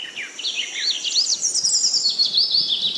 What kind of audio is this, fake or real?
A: real